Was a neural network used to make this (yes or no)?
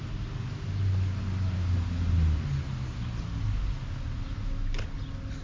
no